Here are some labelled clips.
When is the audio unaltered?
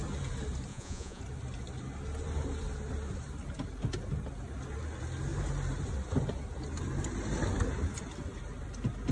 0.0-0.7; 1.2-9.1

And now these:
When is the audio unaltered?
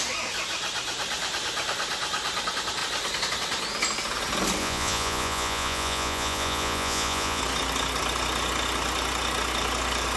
0.0-4.6; 7.4-10.2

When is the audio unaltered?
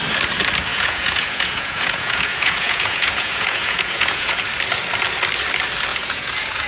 0.0-0.7; 4.4-5.9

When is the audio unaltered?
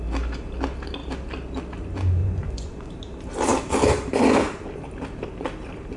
0.0-2.2; 2.9-6.0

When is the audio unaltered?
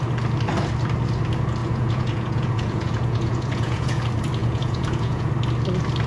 0.0-1.6; 4.0-4.4; 5.3-6.1